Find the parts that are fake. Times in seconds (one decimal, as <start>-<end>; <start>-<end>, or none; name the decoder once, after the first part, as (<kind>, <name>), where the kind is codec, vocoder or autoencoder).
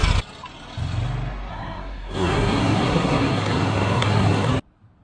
1.5-4.5 (codec, SNAC)